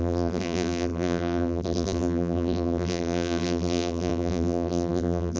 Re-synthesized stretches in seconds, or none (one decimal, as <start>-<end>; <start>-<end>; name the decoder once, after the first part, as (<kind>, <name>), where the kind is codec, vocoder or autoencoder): 0.0-5.4 (vocoder, BigVGAN v2)